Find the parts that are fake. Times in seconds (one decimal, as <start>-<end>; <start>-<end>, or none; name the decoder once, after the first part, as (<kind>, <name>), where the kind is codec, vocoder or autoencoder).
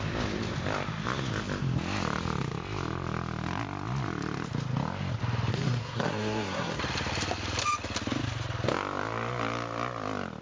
5.5-6.8 (codec, SNAC)